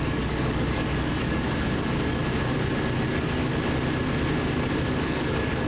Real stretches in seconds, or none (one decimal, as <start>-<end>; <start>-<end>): 2.2-3.1; 3.5-4.9